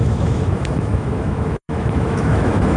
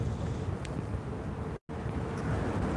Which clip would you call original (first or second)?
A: second